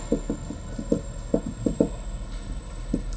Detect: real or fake real